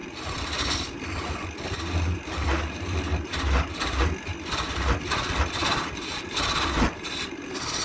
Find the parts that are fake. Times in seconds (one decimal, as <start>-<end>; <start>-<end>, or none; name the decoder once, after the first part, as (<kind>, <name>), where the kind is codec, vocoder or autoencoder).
none